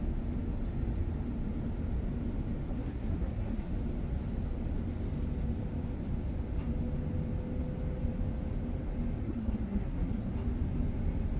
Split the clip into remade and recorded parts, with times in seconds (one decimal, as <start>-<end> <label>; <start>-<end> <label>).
0.0-2.7 recorded; 2.7-3.7 remade; 3.7-9.2 recorded; 9.2-10.3 remade; 10.3-11.4 recorded